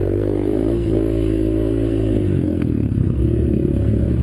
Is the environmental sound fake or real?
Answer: fake